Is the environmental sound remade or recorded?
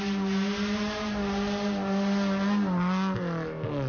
recorded